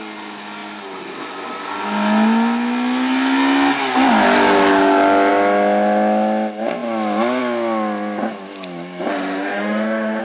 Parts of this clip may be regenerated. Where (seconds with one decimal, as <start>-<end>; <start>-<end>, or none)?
9.1-10.2